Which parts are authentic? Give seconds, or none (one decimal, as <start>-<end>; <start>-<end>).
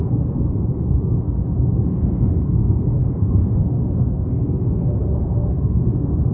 none